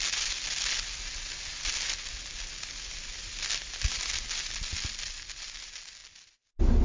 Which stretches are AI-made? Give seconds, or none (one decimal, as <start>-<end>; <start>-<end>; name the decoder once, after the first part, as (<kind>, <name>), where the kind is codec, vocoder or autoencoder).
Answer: none